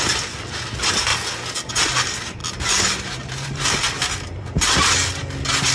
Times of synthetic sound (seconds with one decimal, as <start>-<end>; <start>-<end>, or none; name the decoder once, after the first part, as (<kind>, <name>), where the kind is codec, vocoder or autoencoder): 0.0-1.1 (vocoder, BigVGAN v2); 1.8-5.7